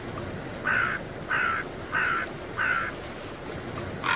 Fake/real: real